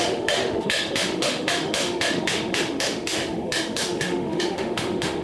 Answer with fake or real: fake